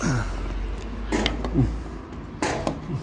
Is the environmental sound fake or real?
real